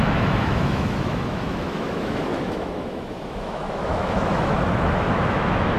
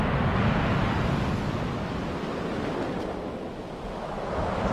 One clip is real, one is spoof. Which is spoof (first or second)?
first